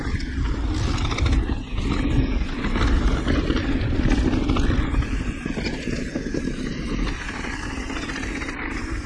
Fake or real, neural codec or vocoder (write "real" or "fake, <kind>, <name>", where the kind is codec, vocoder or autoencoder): real